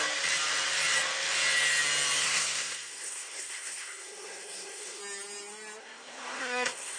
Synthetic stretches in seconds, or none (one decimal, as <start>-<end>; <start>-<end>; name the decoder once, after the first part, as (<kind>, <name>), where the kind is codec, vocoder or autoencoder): 2.2-5.0 (codec, SNAC); 5.8-7.0